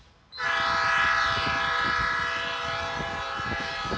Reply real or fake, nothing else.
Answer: real